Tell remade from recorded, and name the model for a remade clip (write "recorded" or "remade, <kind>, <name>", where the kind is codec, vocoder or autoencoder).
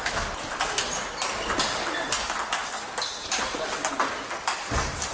recorded